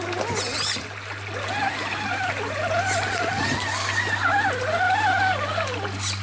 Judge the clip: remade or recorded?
recorded